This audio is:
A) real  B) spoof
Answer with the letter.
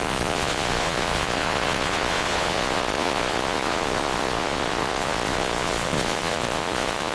B